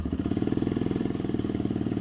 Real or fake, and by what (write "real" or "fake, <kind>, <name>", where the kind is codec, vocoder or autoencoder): fake, vocoder, BigVGAN v2